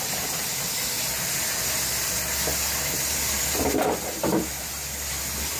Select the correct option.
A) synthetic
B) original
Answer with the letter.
B